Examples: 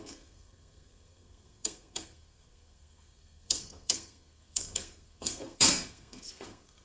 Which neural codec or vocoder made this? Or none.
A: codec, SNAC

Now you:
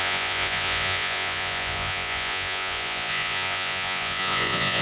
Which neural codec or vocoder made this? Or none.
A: vocoder, Vocos